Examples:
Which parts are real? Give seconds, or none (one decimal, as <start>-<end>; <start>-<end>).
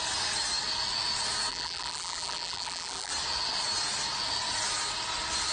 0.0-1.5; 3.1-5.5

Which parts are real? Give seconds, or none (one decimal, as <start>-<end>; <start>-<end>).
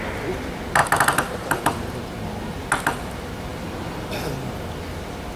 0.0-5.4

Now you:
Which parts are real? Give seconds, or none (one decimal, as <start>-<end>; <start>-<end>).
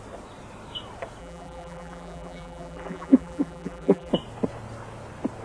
0.0-1.2; 4.1-5.4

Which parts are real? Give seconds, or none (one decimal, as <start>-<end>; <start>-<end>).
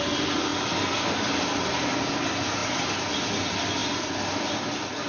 0.0-3.8; 4.6-5.1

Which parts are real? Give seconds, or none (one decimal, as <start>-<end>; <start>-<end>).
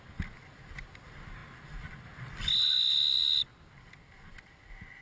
0.0-5.0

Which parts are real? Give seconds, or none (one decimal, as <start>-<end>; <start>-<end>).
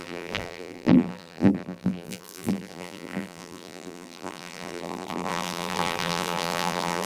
none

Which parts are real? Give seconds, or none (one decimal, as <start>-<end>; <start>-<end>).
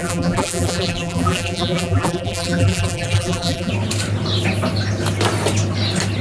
3.7-6.2